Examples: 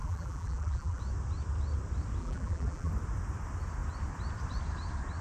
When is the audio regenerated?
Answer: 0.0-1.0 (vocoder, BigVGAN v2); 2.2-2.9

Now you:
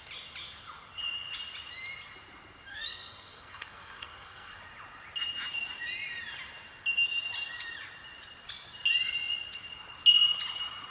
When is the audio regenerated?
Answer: 2.7-4.6 (codec, SNAC)

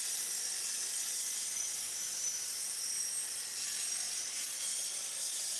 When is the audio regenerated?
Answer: 0.7-1.8 (vocoder, Vocos)

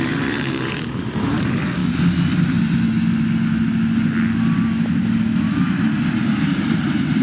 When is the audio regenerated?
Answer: 0.0-1.8 (vocoder, BigVGAN v2); 6.1-7.2

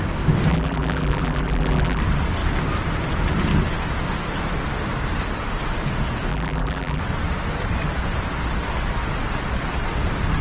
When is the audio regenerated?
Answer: 0.5-2.0 (vocoder, BigVGAN v2); 6.3-7.0

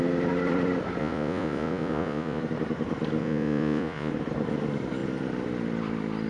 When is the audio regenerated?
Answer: 1.0-2.4 (vocoder, Vocos); 3.2-4.1

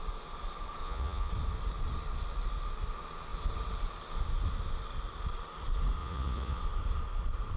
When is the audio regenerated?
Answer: 0.8-1.3 (vocoder, Vocos); 6.0-6.6

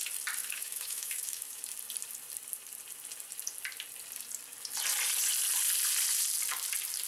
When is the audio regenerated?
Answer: 0.4-1.6 (autoencoder, DAC-VAE)